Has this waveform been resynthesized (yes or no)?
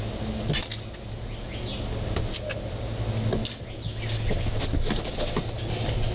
no